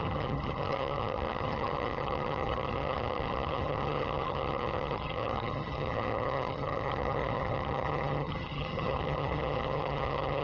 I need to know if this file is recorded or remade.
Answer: remade